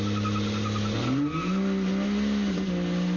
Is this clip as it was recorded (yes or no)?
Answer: yes